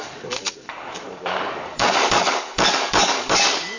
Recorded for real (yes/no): no